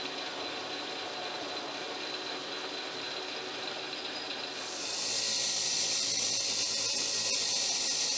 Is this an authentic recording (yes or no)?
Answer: yes